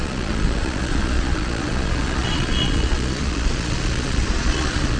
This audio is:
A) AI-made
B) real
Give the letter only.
A